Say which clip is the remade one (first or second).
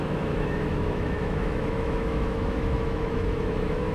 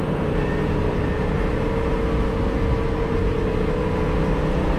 first